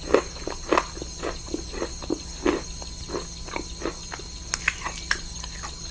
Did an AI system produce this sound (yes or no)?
no